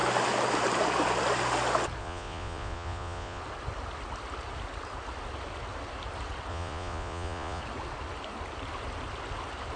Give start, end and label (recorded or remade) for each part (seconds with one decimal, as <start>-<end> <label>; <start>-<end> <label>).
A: 0.0-2.0 recorded; 2.0-3.4 remade; 3.4-6.5 recorded; 6.5-7.6 remade; 7.6-9.8 recorded